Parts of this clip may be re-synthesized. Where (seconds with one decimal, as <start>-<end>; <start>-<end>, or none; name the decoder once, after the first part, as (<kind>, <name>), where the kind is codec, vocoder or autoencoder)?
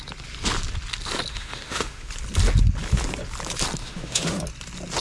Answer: 1.3-2.1 (autoencoder, DAC-VAE); 3.8-4.4